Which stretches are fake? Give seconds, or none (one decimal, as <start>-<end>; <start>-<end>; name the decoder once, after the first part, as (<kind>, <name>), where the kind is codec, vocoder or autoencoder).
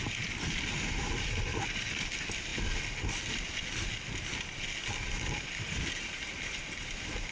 none